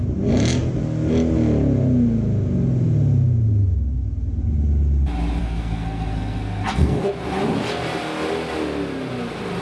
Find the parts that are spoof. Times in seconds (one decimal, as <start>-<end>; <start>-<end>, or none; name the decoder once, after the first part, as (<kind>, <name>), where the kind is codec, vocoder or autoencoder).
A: 5.4-7.1 (codec, SNAC)